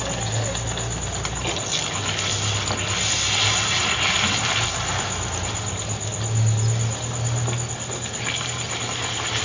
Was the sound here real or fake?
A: real